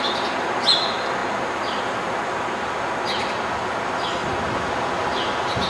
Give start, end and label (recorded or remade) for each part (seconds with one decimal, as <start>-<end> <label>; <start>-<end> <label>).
0.0-5.7 recorded